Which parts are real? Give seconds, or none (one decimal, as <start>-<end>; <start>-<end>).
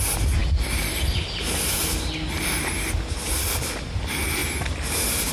0.0-4.4